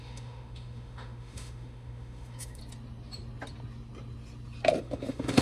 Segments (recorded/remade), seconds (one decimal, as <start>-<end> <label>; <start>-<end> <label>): 0.0-2.6 remade; 2.6-4.8 recorded; 4.8-5.4 remade